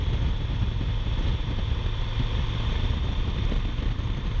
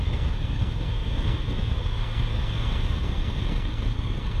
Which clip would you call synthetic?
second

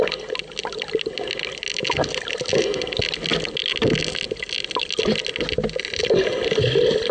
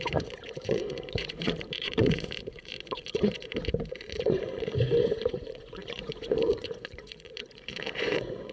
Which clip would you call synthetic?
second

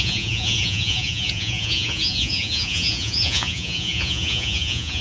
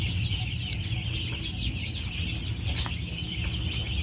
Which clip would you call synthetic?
first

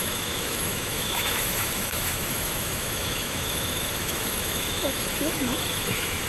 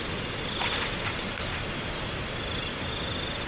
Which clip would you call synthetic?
first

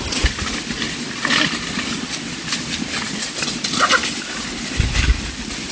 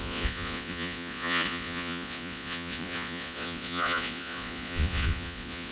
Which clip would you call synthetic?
second